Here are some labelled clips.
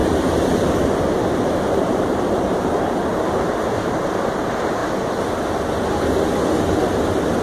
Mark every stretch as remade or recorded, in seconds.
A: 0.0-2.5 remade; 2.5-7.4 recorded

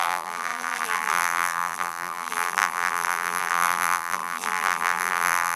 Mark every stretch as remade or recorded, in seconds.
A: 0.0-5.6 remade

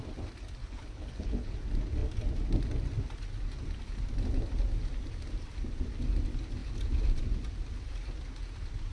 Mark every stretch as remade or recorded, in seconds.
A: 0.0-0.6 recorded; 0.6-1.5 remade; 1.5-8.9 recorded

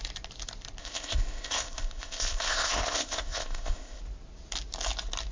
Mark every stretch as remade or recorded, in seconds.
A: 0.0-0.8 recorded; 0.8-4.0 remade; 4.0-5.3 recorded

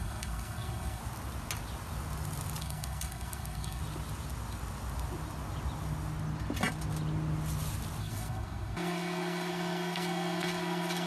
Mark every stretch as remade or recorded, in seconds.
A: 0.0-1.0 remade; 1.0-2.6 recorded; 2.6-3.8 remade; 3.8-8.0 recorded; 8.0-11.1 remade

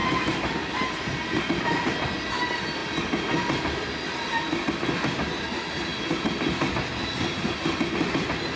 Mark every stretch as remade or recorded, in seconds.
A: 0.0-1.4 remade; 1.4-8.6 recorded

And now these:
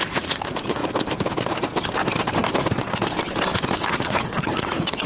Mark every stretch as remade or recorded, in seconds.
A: 0.0-0.8 remade; 0.8-3.9 recorded; 3.9-5.1 remade